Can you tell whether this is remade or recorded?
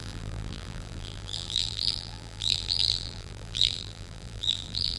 remade